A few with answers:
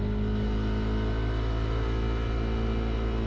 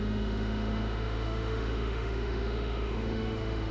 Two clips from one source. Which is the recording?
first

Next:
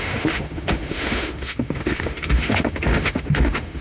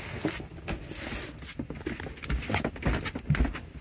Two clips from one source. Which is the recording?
second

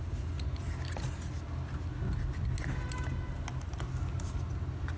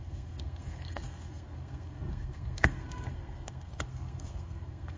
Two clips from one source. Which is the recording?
first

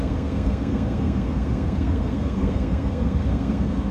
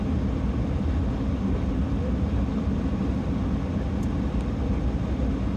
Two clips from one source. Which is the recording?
second